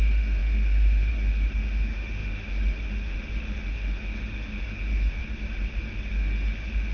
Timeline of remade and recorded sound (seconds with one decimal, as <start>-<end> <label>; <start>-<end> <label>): 0.0-5.2 remade; 5.2-6.1 recorded; 6.1-6.9 remade

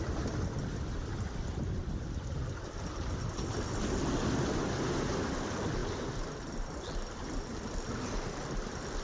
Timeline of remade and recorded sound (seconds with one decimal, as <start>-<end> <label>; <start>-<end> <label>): 0.0-9.0 recorded

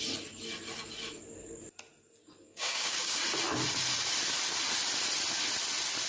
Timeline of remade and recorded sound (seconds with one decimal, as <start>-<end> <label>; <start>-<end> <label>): 0.0-2.2 recorded; 2.2-3.2 remade; 3.2-6.1 recorded

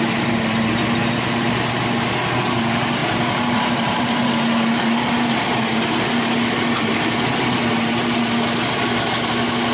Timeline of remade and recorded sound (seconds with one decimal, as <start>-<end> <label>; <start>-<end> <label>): 0.0-3.0 recorded; 3.0-4.1 remade; 4.1-9.7 recorded